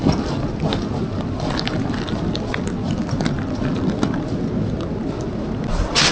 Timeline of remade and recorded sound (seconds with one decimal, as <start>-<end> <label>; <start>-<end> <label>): 0.0-6.1 recorded